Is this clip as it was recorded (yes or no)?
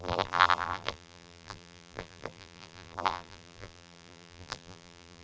no